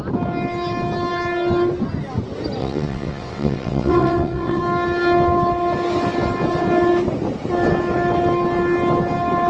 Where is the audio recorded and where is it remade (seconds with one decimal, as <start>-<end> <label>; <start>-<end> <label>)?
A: 0.0-2.6 recorded; 2.6-4.6 remade; 4.6-9.5 recorded